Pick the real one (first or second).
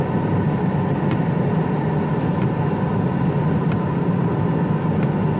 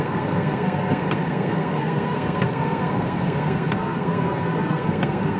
first